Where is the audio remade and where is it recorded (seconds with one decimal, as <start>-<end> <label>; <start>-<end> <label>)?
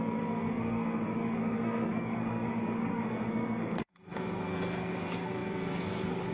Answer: 0.0-6.3 remade